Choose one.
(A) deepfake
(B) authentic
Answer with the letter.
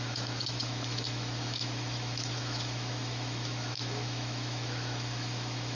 A